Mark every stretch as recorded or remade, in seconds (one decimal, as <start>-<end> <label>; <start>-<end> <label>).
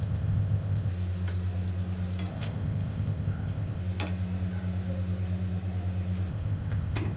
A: 0.0-0.9 remade; 0.9-2.3 recorded; 2.3-3.8 remade; 3.8-6.3 recorded; 6.3-7.2 remade